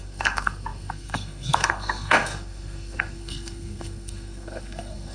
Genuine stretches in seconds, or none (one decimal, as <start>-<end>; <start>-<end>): none